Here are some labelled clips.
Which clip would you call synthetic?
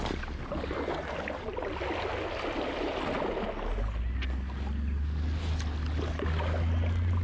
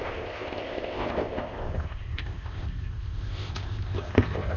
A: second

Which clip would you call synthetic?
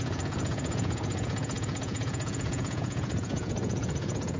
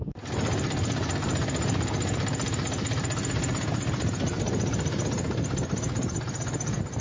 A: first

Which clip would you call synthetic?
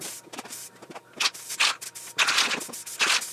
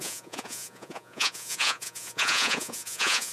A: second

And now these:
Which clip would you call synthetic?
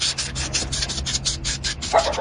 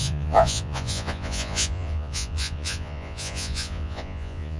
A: second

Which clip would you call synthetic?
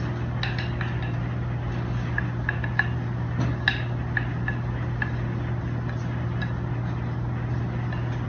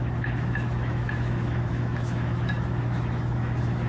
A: second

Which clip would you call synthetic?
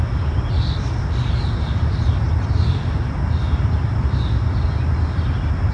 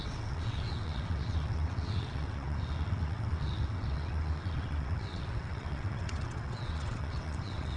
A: second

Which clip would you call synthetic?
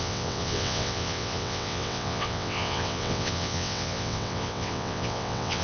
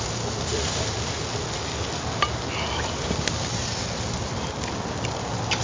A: first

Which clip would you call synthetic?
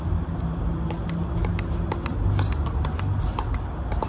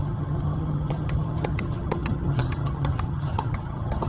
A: second